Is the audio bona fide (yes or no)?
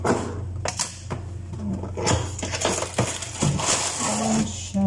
yes